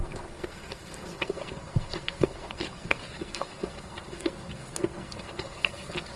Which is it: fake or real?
fake